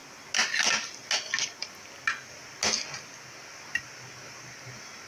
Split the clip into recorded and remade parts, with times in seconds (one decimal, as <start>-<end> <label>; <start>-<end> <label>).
0.0-5.1 recorded